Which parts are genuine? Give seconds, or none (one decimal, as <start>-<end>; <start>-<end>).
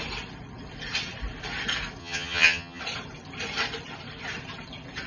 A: 0.0-2.0; 2.8-5.1